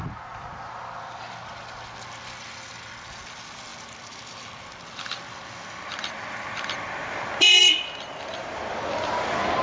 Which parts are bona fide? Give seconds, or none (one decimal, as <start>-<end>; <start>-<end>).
0.0-9.6